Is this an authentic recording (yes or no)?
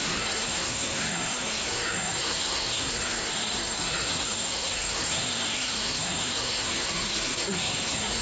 no